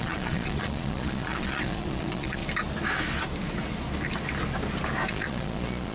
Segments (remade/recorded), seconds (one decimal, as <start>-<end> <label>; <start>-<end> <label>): 0.0-2.4 remade; 2.4-5.1 recorded; 5.1-5.9 remade